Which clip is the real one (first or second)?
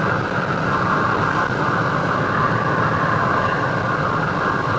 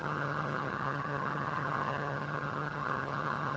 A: first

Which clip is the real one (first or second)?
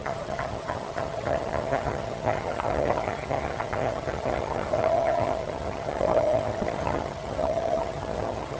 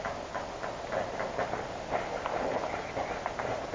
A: second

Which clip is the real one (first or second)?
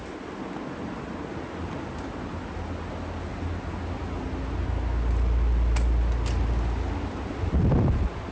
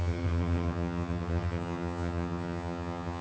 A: first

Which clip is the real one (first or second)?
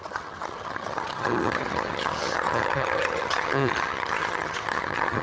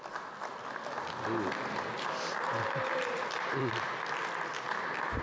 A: second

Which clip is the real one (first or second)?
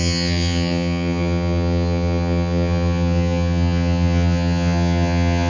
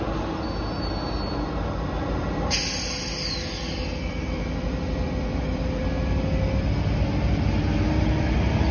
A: second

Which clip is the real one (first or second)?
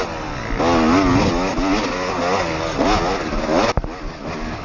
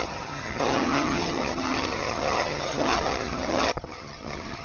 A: first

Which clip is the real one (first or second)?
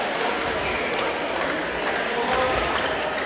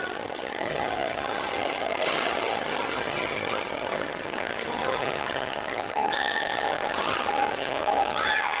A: first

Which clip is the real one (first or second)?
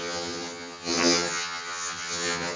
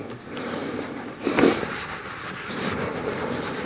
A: second